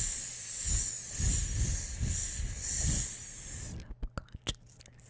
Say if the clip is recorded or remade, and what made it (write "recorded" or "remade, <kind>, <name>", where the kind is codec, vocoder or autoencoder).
recorded